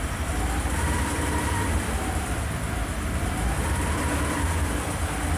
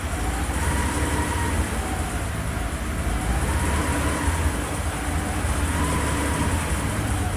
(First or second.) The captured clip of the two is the second